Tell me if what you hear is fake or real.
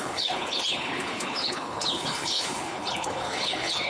fake